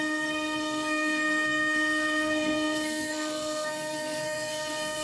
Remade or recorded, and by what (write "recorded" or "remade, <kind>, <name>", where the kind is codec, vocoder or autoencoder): remade, codec, SNAC